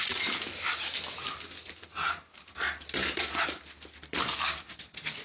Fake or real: real